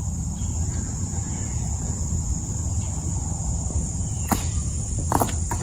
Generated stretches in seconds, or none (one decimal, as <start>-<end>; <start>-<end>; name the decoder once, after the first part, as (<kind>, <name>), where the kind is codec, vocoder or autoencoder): 0.9-1.9 (vocoder, Vocos); 4.0-5.1